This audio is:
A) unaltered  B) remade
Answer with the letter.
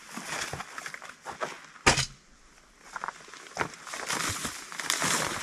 A